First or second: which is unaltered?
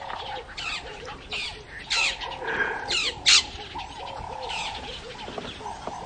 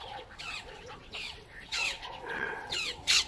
first